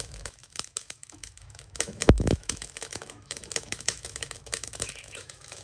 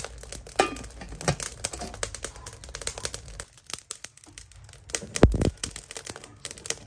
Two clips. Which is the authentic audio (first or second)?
second